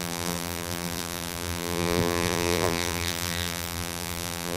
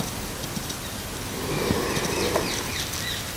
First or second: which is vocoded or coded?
first